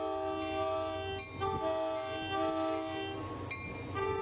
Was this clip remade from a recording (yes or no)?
no